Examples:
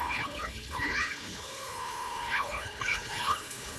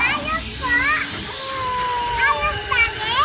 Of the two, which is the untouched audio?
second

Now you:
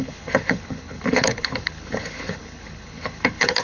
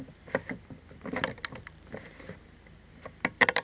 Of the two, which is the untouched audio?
second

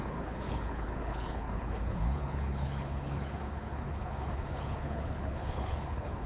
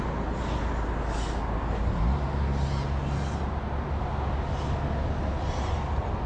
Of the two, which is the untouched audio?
second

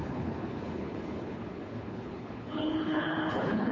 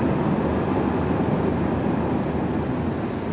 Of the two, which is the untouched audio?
second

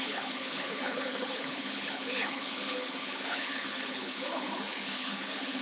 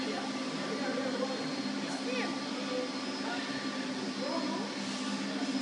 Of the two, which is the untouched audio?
second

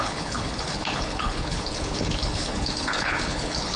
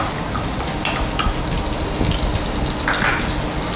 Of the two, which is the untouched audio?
second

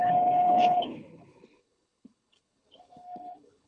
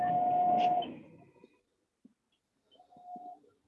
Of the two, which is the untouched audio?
second